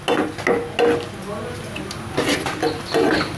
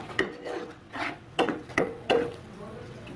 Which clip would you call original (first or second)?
first